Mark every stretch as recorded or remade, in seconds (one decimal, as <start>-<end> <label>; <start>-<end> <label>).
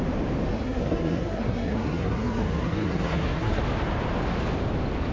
0.0-0.5 recorded; 0.5-3.6 remade; 3.6-5.1 recorded